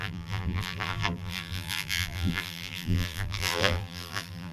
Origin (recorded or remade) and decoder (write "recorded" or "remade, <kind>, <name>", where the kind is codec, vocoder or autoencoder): remade, vocoder, BigVGAN v2